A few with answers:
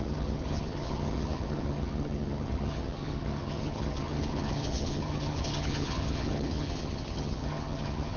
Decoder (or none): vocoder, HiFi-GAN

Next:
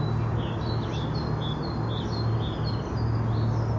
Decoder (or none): none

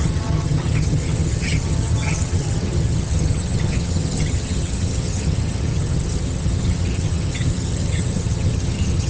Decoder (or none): vocoder, HiFi-GAN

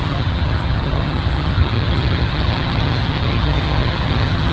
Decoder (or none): vocoder, HiFi-GAN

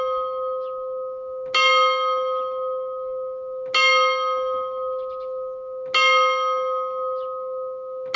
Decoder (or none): none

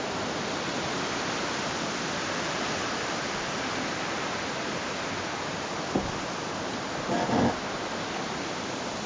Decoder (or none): none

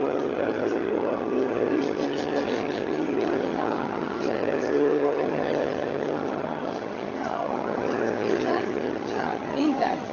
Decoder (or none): vocoder, HiFi-GAN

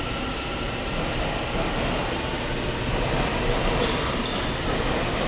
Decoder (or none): none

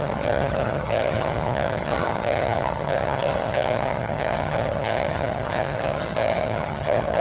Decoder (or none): vocoder, HiFi-GAN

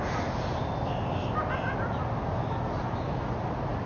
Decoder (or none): none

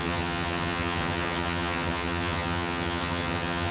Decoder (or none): vocoder, HiFi-GAN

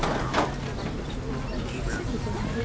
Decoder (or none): none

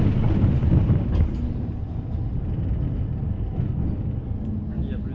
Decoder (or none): none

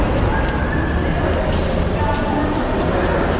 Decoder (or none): none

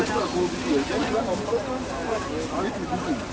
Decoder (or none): none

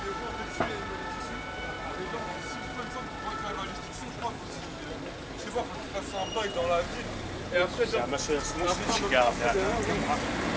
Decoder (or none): none